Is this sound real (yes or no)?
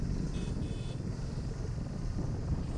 yes